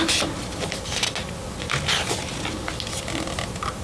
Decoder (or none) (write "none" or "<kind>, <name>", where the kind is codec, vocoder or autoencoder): none